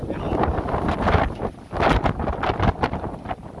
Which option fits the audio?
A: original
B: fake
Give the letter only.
A